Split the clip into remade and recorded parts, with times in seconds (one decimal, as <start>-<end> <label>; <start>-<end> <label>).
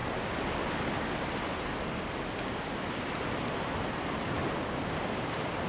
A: 0.0-5.7 recorded